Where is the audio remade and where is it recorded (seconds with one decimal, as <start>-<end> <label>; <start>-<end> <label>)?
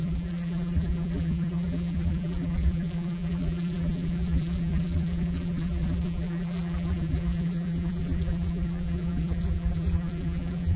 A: 0.0-10.8 remade